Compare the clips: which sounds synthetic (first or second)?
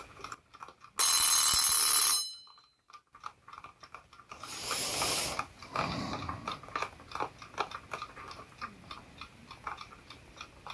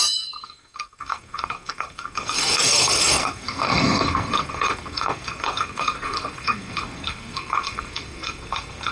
second